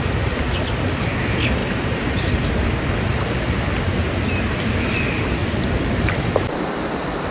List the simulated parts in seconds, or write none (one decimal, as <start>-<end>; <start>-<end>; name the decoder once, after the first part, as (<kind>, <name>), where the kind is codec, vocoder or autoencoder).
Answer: 1.6-2.5 (vocoder, BigVGAN v2)